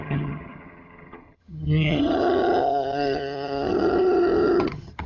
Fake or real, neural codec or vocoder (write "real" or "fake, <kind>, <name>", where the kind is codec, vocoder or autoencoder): fake, vocoder, HiFi-GAN